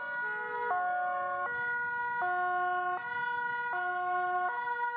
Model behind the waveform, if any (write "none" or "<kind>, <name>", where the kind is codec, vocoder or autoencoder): none